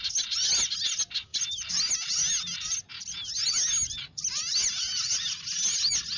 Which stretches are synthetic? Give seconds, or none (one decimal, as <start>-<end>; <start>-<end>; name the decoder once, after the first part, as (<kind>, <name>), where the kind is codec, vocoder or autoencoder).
none